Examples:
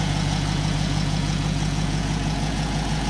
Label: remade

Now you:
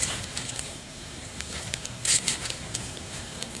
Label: remade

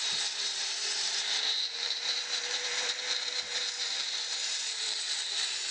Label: remade